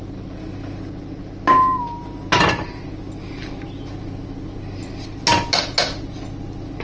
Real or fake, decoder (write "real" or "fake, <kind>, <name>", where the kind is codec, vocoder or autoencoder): real